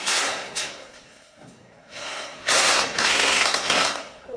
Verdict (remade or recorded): remade